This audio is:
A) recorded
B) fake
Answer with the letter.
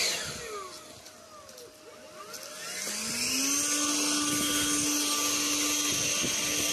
A